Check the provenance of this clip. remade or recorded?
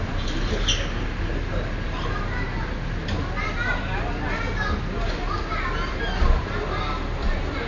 recorded